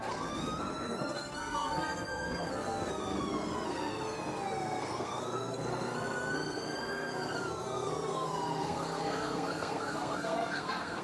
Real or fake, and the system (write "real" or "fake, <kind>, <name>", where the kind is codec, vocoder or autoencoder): fake, codec, SNAC